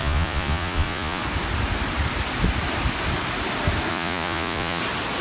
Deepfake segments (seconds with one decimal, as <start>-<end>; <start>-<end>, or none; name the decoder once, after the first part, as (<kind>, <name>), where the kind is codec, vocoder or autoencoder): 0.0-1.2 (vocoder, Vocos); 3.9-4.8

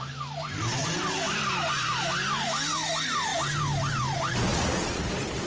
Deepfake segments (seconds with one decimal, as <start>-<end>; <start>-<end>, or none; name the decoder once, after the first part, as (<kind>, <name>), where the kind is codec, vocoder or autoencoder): 4.5-5.1 (vocoder, Vocos)

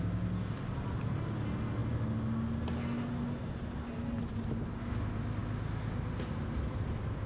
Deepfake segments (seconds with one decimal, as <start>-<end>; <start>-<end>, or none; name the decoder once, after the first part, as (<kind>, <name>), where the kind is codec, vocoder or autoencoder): none

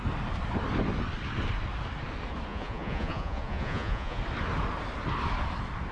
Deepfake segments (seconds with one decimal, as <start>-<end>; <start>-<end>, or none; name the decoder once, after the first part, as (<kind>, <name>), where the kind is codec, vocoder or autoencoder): 2.5-4.2 (vocoder, Vocos)